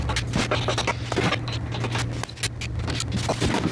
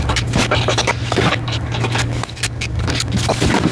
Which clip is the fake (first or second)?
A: second